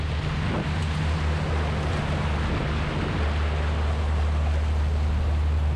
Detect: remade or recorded recorded